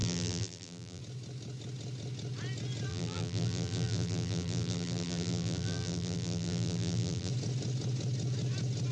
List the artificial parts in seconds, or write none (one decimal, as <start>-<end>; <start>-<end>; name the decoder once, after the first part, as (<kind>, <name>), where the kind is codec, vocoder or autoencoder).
0.0-1.0 (vocoder, BigVGAN v2); 2.9-7.3